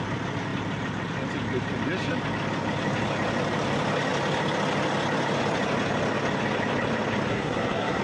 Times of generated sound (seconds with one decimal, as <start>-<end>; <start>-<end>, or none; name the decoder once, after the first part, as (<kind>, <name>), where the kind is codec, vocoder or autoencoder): 7.3-8.0 (codec, SNAC)